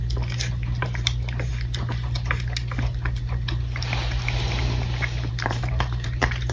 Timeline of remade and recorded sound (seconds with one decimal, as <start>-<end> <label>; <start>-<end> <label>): 0.0-0.8 recorded; 0.8-1.5 remade; 1.5-5.3 recorded; 5.3-6.5 remade